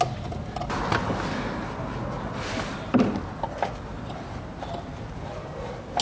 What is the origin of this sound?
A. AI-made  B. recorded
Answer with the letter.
B